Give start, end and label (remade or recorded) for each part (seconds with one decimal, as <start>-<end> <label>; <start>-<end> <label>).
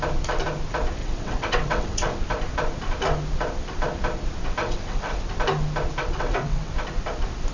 0.0-1.0 recorded; 1.0-2.2 remade; 2.2-4.6 recorded; 4.6-5.2 remade; 5.2-6.0 recorded; 6.0-6.7 remade; 6.7-7.5 recorded